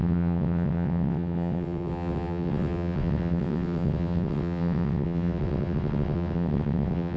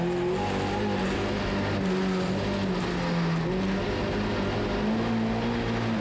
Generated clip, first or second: first